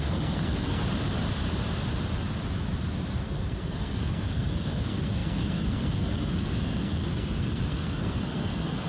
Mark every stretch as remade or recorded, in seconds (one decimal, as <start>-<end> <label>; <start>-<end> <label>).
0.0-0.8 remade; 0.8-3.2 recorded; 3.2-8.9 remade